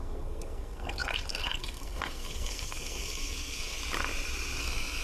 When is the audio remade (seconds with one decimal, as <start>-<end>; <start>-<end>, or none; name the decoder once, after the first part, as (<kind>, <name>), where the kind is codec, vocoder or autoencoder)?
0.0-3.8 (codec, SNAC); 4.6-5.0